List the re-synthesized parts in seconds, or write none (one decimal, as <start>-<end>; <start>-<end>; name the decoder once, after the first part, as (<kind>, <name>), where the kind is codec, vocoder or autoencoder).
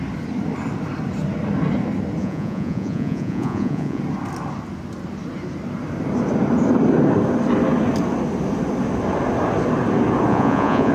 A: 2.2-4.0 (vocoder, Vocos); 10.3-10.9